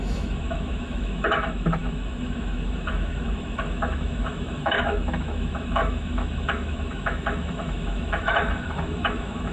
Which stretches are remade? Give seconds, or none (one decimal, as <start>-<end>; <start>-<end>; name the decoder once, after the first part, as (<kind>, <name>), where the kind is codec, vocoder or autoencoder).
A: 0.0-9.5 (autoencoder, DAC-VAE)